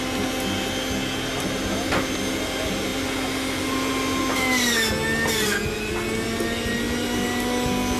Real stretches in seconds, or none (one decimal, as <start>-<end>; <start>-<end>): 0.0-8.0